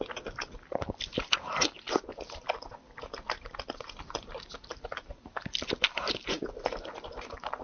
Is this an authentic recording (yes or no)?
yes